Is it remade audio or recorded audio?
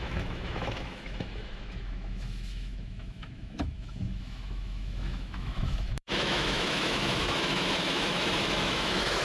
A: remade